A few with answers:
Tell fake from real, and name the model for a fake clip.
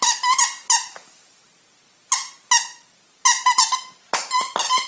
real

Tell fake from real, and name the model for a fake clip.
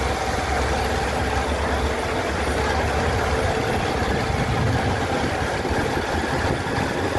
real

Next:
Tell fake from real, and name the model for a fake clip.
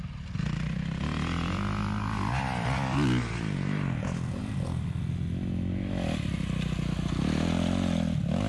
real